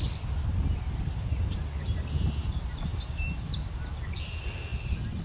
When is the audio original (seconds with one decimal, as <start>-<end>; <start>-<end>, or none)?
0.0-5.2